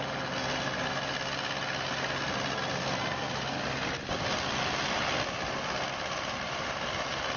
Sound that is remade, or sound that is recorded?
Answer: recorded